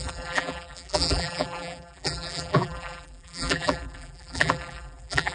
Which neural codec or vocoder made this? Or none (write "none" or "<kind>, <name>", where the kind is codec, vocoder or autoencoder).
vocoder, BigVGAN v2